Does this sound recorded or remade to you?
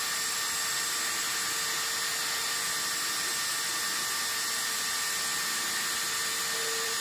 recorded